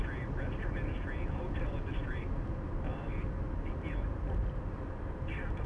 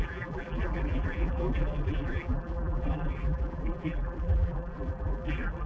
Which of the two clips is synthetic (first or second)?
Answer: second